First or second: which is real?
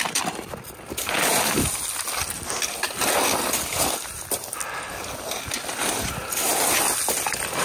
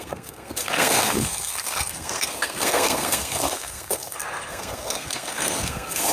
first